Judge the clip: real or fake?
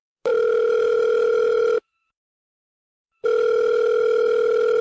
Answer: fake